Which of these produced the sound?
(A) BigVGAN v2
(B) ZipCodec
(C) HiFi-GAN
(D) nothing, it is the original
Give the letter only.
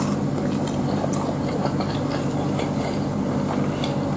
D